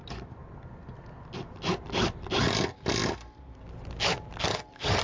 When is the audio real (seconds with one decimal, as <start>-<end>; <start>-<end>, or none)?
0.0-5.0